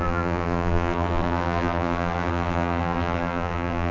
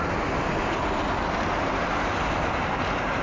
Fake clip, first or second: first